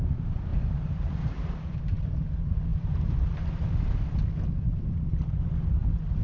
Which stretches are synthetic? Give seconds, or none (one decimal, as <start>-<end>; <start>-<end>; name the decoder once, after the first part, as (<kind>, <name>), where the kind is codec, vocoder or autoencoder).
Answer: 0.5-1.8 (vocoder, BigVGAN v2)